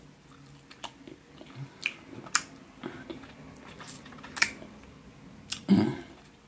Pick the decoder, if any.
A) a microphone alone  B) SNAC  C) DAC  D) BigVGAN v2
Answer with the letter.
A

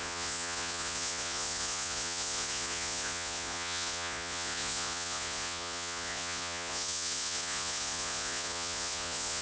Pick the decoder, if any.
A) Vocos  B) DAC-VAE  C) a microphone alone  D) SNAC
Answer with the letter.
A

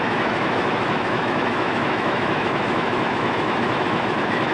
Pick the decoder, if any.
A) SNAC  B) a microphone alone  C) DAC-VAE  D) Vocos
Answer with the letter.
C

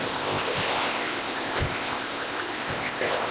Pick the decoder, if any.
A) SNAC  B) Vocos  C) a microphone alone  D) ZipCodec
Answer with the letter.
D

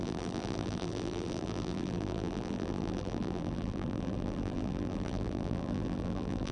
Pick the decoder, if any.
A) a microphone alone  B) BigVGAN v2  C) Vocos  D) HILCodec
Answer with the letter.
B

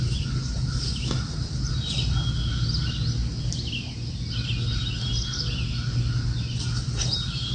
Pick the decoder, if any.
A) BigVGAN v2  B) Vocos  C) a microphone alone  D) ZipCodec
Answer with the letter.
C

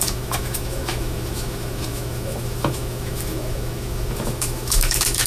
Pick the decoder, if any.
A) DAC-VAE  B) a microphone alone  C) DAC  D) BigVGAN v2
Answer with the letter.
A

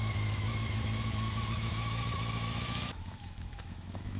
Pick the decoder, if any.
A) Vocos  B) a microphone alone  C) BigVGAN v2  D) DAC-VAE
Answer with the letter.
D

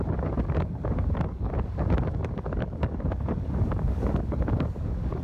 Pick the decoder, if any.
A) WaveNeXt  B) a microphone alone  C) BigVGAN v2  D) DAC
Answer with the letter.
D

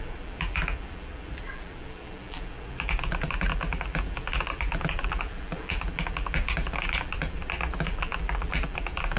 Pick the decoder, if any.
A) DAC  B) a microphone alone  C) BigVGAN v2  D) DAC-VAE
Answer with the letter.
C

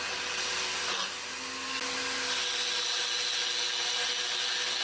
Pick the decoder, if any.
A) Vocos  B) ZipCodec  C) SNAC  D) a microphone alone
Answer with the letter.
D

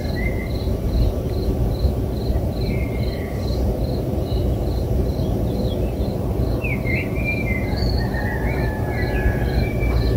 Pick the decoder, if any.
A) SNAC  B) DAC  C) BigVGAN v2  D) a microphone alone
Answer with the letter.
C